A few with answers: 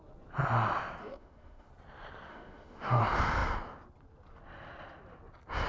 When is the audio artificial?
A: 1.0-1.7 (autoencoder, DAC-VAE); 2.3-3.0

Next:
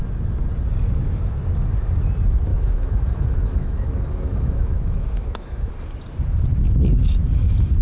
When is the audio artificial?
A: 2.5-5.7 (autoencoder, DAC-VAE)